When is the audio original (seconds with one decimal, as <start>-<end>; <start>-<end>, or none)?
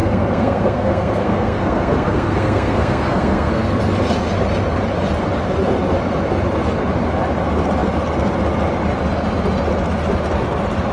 3.8-10.9